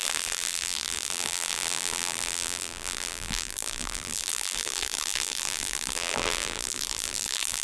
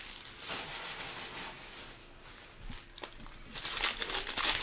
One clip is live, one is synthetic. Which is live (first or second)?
second